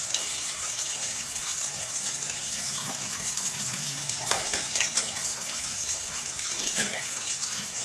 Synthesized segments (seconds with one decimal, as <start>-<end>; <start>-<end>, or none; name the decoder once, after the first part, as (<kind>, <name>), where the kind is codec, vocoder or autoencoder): 0.0-7.8 (codec, SNAC)